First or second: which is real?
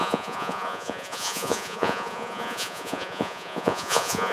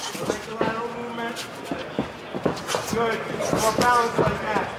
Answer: second